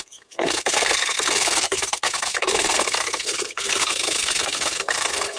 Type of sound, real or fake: fake